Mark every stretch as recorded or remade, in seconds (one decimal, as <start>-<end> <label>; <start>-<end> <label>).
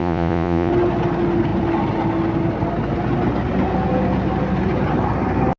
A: 0.0-0.7 remade; 0.7-5.6 recorded